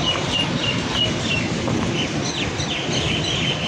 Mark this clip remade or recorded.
recorded